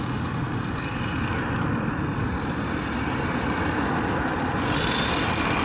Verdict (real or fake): real